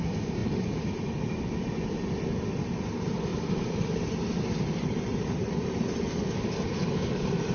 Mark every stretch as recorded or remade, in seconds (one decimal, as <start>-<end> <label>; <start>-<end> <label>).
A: 0.0-3.3 recorded; 3.3-6.2 remade; 6.2-7.5 recorded